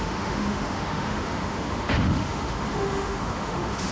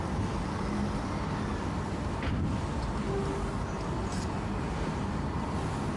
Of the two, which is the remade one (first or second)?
first